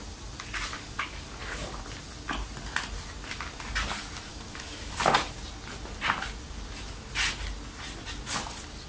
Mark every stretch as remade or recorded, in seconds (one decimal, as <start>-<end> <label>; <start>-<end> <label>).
0.0-0.7 recorded; 0.7-1.8 remade; 1.8-4.3 recorded; 4.3-5.0 remade; 5.0-8.9 recorded